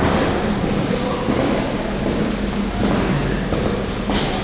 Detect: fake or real real